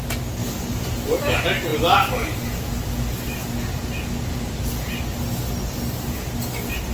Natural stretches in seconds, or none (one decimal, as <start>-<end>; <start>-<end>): 0.0-0.4; 1.2-6.9